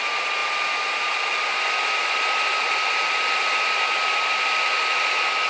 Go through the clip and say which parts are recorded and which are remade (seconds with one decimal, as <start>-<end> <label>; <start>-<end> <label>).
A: 0.0-5.5 recorded